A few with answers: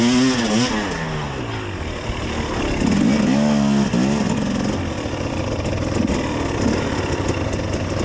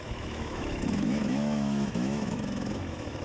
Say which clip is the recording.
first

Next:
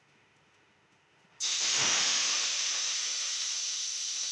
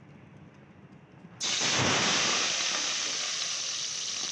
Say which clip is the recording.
second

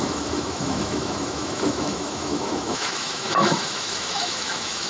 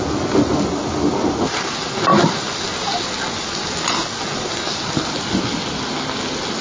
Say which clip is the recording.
second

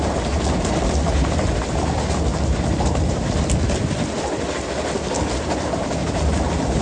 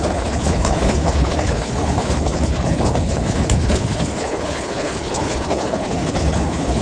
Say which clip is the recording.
first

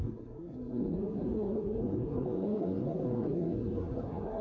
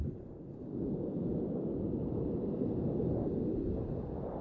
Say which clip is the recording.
second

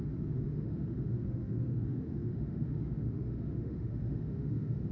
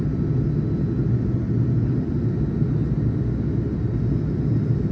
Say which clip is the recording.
second